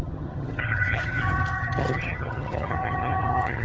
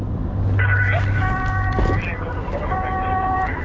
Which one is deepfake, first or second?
first